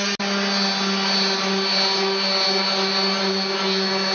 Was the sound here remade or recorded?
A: recorded